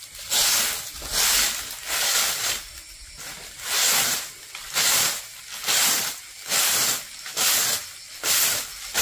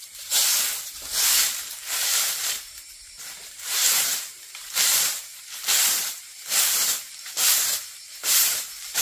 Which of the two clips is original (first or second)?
first